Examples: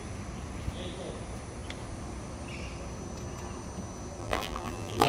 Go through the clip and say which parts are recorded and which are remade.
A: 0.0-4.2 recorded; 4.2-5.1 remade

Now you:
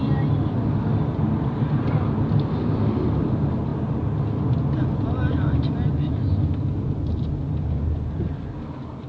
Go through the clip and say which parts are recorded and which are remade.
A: 0.0-9.1 recorded

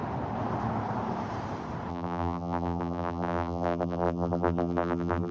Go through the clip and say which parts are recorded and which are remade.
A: 0.0-1.9 recorded; 1.9-5.3 remade

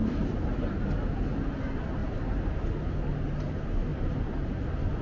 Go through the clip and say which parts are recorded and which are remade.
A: 0.0-0.6 remade; 0.6-2.0 recorded; 2.0-2.5 remade; 2.5-3.9 recorded; 3.9-4.6 remade; 4.6-5.0 recorded

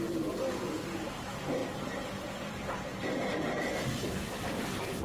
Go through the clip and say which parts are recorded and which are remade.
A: 0.0-5.0 remade

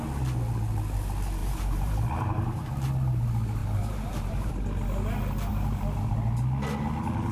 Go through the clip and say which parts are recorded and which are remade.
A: 0.0-1.4 recorded; 1.4-2.7 remade; 2.7-3.6 recorded; 3.6-4.5 remade; 4.5-5.5 recorded; 5.5-6.1 remade; 6.1-7.3 recorded

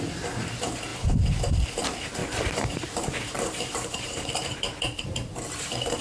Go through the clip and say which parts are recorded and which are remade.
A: 0.0-0.9 recorded; 0.9-1.4 remade; 1.4-2.2 recorded; 2.2-6.0 remade

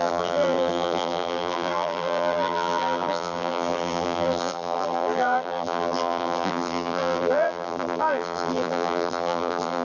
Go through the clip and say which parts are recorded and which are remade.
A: 0.0-9.8 remade